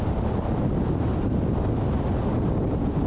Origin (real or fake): real